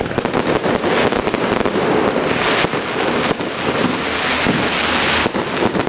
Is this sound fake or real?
real